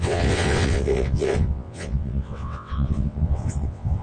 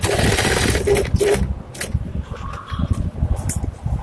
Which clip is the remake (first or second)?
first